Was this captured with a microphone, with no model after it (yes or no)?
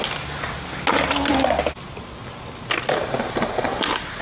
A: yes